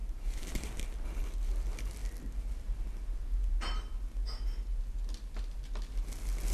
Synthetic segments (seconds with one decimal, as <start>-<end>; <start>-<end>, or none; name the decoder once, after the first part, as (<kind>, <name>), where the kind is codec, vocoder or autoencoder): 0.0-0.8 (vocoder, BigVGAN v2)